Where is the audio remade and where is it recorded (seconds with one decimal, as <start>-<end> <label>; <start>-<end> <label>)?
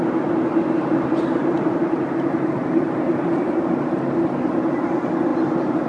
0.0-0.5 recorded; 0.5-4.0 remade; 4.0-5.3 recorded; 5.3-5.9 remade